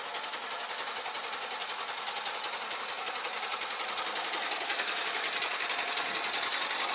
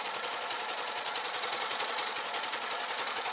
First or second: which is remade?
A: second